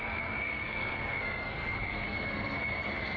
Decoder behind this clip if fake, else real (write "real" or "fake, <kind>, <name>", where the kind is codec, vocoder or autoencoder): fake, codec, SNAC